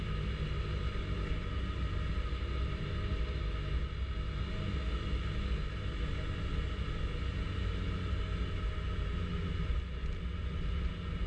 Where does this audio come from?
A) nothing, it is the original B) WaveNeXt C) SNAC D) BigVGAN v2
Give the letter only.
A